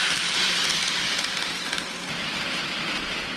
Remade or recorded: remade